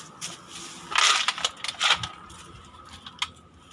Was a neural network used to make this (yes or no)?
no